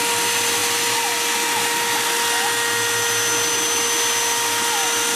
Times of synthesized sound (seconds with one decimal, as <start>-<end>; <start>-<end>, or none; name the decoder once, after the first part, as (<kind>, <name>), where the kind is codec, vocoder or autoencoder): none